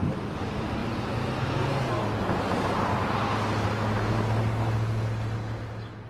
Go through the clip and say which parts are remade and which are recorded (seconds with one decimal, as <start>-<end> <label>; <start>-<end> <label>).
0.0-6.1 recorded